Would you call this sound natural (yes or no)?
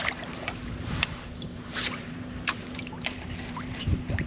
no